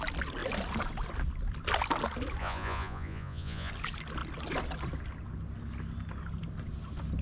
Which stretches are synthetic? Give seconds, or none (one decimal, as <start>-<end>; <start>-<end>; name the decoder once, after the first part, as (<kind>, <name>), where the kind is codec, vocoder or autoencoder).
2.4-3.7 (vocoder, Vocos)